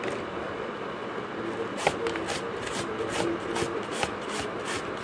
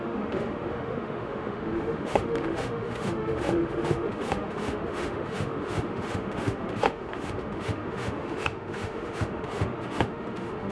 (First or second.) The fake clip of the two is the second